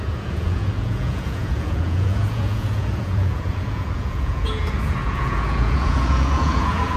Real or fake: fake